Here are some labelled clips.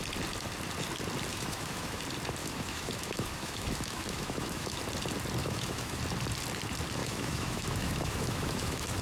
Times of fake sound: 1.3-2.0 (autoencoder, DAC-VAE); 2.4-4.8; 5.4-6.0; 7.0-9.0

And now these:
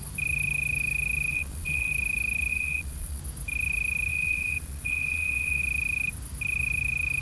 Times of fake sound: 1.3-1.9 (vocoder, Vocos); 2.5-3.2; 4.1-5.6

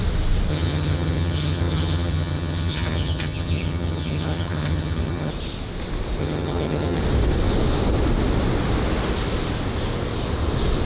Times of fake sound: 0.5-5.3 (vocoder, HiFi-GAN); 6.2-7.0